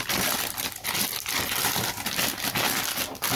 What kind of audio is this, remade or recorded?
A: recorded